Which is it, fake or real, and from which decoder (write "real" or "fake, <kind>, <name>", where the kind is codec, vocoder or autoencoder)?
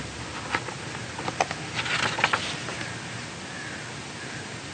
real